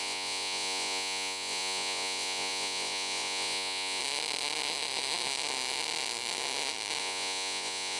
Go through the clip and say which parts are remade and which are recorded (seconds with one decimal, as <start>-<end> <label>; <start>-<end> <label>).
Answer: 0.0-4.0 remade; 4.0-7.0 recorded; 7.0-8.0 remade